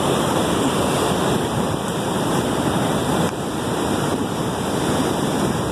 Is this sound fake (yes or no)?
yes